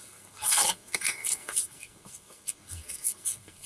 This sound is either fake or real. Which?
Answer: fake